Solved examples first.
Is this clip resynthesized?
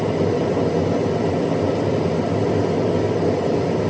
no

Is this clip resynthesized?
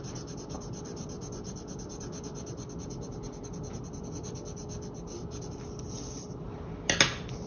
no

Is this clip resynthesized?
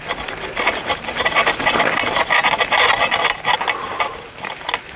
no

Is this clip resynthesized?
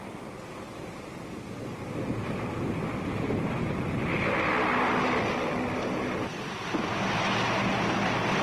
no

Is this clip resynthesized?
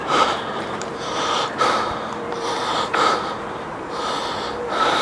yes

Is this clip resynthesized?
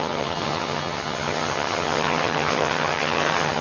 yes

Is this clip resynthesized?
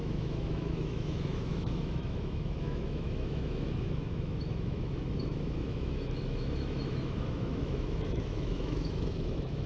yes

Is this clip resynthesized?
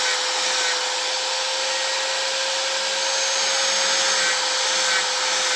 no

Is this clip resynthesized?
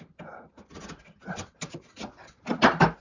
no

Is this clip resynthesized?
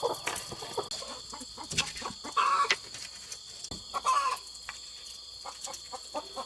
no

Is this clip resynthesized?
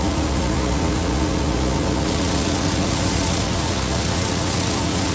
yes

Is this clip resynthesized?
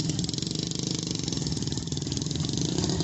no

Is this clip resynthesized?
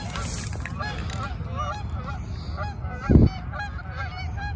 no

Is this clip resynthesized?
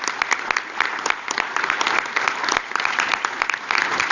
no